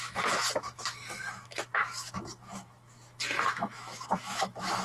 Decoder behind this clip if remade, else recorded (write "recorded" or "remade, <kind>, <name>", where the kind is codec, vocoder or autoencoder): remade, autoencoder, DAC-VAE